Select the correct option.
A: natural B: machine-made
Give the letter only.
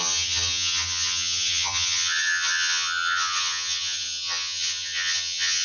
B